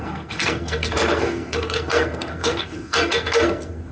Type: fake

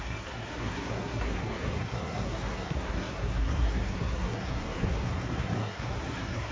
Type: fake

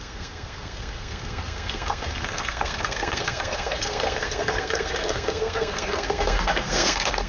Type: fake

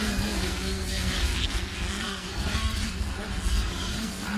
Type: fake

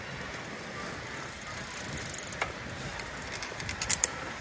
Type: real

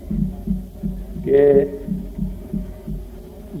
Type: real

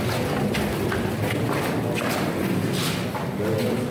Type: real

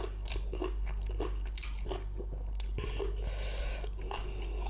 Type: real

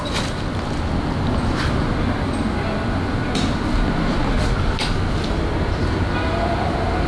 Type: real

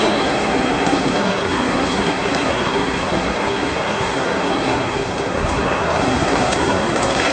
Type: fake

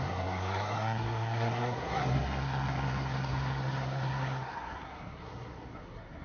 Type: fake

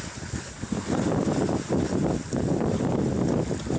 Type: real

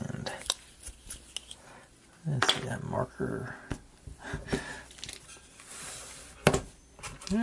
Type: real